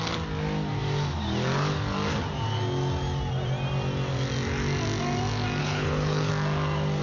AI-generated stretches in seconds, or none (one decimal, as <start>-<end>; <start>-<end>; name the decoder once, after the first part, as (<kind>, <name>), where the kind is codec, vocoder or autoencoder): 5.6-6.3 (codec, HILCodec)